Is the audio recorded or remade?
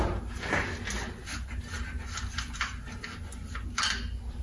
recorded